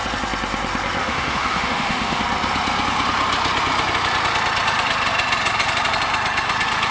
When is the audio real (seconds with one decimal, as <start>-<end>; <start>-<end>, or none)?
0.0-1.0; 2.2-6.9